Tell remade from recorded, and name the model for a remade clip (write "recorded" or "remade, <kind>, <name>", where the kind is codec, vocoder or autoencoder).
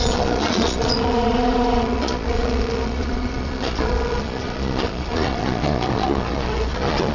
remade, vocoder, Vocos